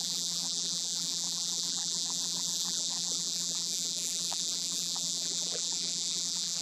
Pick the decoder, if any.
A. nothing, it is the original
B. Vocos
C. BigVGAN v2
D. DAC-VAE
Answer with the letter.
C